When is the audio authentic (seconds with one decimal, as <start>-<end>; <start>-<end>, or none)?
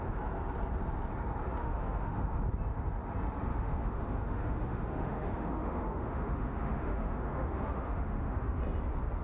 0.0-1.6; 2.4-3.5; 8.6-9.2